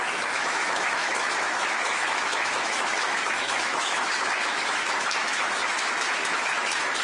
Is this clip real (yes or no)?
no